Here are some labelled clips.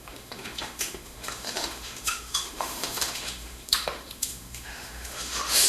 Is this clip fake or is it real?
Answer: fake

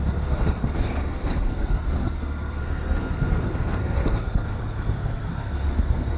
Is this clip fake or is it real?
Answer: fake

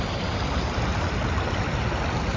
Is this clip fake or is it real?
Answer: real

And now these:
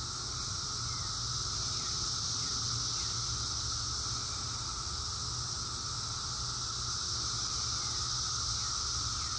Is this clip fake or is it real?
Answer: real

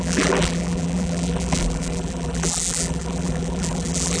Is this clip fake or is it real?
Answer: fake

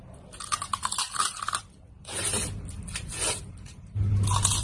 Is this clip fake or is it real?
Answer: real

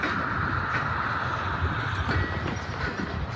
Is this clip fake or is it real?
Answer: real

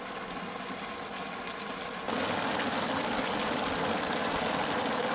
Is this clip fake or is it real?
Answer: real